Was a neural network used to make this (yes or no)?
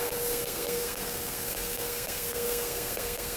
yes